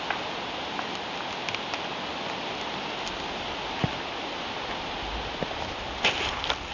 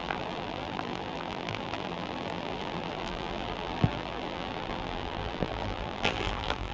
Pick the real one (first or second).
first